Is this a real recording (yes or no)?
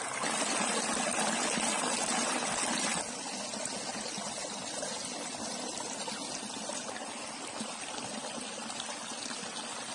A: yes